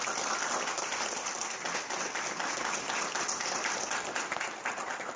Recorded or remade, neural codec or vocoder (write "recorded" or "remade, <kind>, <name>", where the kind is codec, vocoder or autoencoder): recorded